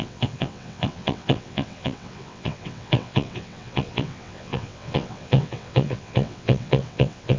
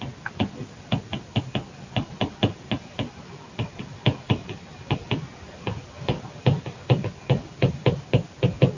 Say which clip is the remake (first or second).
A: first